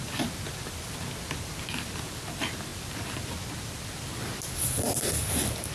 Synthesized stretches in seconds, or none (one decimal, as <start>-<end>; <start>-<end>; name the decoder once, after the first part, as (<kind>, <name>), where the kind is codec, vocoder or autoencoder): none